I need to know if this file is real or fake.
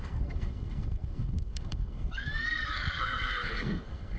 fake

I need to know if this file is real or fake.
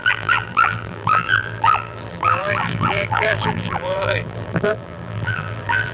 fake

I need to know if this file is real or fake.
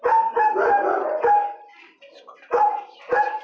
real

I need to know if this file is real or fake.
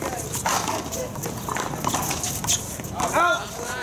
real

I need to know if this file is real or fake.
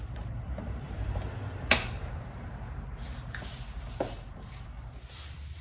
fake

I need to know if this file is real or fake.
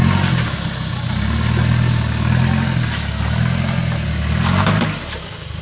real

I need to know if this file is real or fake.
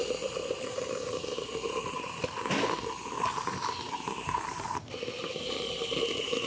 real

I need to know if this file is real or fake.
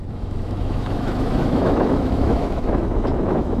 fake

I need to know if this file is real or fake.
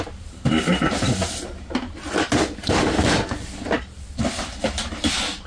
real